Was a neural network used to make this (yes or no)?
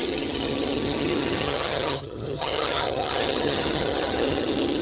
yes